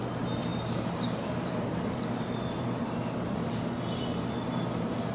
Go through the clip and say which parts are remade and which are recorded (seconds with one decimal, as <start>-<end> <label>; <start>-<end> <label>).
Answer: 0.0-0.5 recorded; 0.5-3.6 remade; 3.6-5.1 recorded